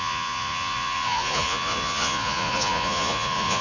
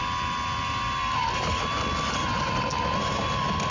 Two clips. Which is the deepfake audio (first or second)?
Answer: first